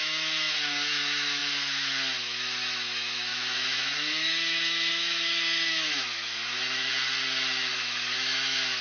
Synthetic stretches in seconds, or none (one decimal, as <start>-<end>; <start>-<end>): 0.0-6.9; 7.7-8.8